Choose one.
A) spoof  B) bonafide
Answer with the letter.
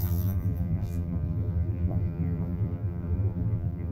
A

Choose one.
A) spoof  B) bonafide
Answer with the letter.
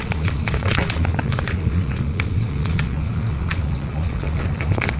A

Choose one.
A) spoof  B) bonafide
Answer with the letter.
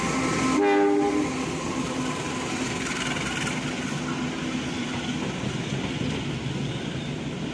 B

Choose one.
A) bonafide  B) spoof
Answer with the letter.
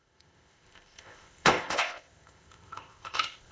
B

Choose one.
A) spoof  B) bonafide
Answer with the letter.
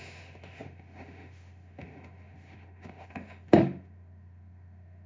A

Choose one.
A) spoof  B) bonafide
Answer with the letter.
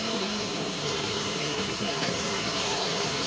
A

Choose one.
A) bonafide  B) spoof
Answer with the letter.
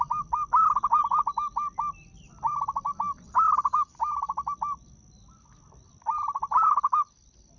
A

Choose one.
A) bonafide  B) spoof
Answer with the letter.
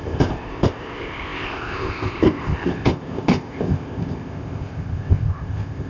B